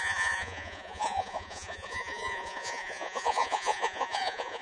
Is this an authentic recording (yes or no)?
no